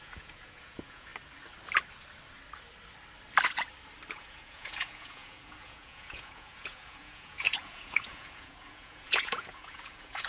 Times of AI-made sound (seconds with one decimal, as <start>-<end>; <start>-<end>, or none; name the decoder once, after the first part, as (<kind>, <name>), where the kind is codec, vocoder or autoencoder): 0.0-1.1 (vocoder, Vocos); 4.1-10.3